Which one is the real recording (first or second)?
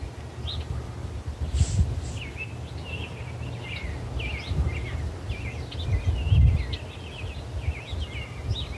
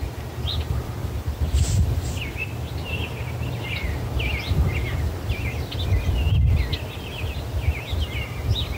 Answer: first